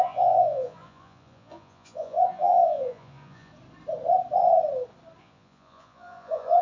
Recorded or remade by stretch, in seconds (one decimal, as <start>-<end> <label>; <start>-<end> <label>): 0.0-3.5 remade; 3.5-5.2 recorded; 5.2-6.6 remade